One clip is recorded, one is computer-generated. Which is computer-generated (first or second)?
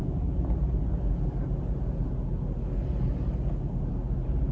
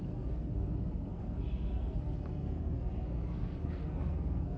second